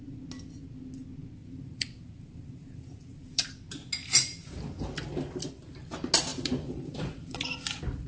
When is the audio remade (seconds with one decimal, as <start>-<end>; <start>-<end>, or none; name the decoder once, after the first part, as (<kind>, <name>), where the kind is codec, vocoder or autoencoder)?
1.4-3.5 (vocoder, BigVGAN v2); 6.3-7.4

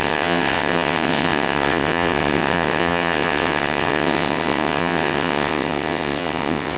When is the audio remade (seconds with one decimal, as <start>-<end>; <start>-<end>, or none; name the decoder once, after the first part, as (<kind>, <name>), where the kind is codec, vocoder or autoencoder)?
0.0-6.8 (vocoder, WaveNeXt)

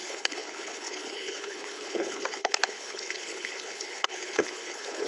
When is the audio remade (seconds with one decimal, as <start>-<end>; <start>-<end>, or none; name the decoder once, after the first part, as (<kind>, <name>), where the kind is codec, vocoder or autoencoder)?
0.0-5.1 (codec, HILCodec)

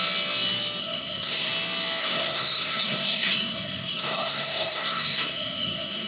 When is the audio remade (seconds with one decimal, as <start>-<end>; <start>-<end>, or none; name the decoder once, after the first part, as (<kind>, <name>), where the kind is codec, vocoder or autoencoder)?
0.8-1.5 (codec, SNAC); 2.0-6.1